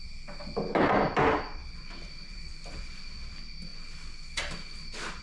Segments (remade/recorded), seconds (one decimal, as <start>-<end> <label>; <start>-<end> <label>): 0.0-1.6 recorded; 1.6-3.0 remade; 3.0-5.2 recorded